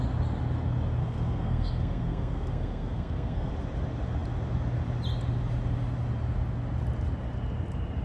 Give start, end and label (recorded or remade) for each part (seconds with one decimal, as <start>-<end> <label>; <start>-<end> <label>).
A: 0.0-1.0 recorded; 1.0-3.5 remade; 3.5-8.0 recorded